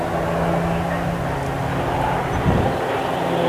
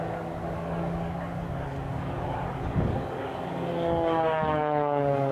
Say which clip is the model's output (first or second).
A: second